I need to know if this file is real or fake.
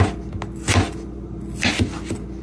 real